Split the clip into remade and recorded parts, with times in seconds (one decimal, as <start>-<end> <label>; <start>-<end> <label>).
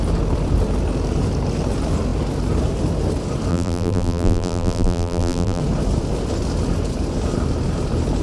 0.0-3.5 recorded; 3.5-5.6 remade; 5.6-8.2 recorded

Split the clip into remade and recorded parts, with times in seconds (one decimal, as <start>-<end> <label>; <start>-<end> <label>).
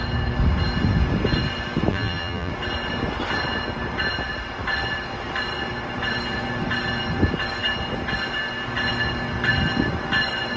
0.0-1.9 recorded; 1.9-2.5 remade; 2.5-10.6 recorded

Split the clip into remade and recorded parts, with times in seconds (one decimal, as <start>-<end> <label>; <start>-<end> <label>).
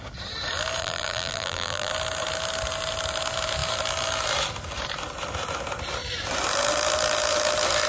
0.0-0.8 recorded; 0.8-1.9 remade; 1.9-7.9 recorded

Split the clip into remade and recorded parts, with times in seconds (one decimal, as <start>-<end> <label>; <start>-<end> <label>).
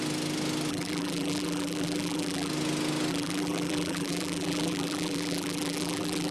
0.0-0.7 recorded; 0.7-2.5 remade; 2.5-3.1 recorded; 3.1-6.3 remade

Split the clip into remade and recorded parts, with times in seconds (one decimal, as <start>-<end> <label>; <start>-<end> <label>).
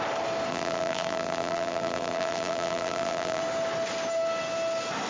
0.0-0.5 recorded; 0.5-3.4 remade; 3.4-5.1 recorded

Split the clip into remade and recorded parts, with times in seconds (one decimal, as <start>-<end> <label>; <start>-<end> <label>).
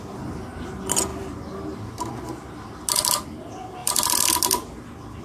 0.0-1.1 recorded; 1.1-2.1 remade; 2.1-3.8 recorded; 3.8-4.3 remade; 4.3-5.2 recorded